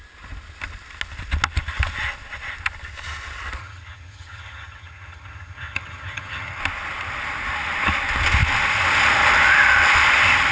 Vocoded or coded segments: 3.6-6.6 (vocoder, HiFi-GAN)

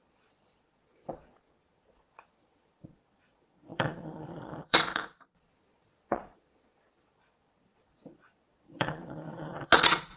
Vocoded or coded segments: 0.0-10.2 (vocoder, Vocos)